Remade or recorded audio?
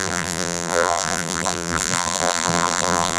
remade